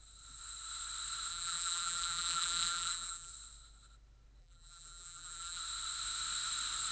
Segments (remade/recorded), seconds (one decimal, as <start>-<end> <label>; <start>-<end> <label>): 0.0-1.3 recorded; 1.3-3.3 remade; 3.3-4.4 recorded; 4.4-5.6 remade; 5.6-6.9 recorded

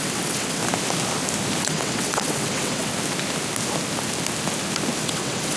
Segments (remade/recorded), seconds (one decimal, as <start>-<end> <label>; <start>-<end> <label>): 0.0-0.6 remade; 0.6-1.6 recorded; 1.6-2.9 remade; 2.9-5.0 recorded; 5.0-5.6 remade

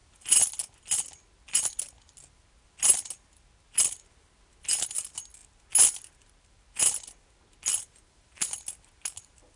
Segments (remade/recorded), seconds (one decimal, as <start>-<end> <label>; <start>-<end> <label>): 0.0-9.6 recorded